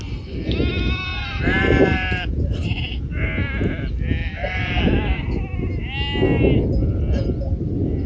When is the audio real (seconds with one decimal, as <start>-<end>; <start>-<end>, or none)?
0.0-1.1; 3.0-4.2; 4.8-8.1

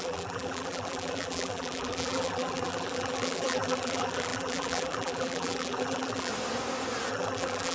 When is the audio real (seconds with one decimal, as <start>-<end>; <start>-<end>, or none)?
6.3-7.1

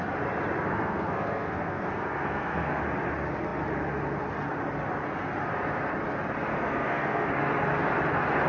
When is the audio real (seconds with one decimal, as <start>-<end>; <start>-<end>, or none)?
0.0-0.7; 2.8-6.5; 7.3-8.5